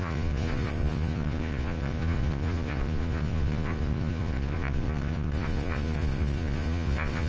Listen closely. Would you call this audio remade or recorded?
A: remade